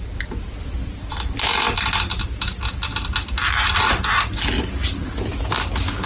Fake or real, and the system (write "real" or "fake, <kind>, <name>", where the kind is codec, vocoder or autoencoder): real